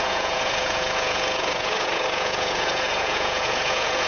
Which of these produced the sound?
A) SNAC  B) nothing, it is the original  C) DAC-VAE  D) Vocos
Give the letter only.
D